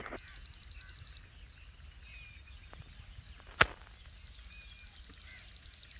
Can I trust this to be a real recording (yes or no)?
yes